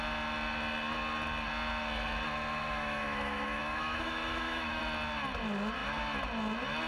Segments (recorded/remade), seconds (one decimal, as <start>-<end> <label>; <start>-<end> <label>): 0.0-2.6 recorded; 2.6-4.8 remade; 4.8-6.9 recorded